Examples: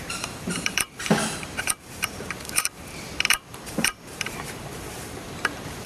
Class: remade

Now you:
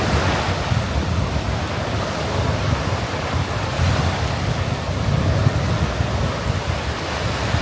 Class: recorded